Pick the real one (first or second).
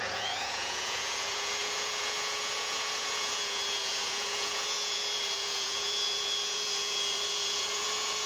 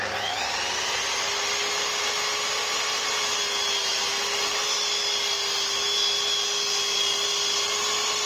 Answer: second